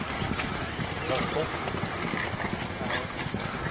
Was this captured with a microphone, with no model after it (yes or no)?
yes